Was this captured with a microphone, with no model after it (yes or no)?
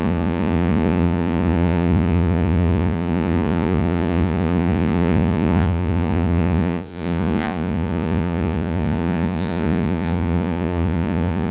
no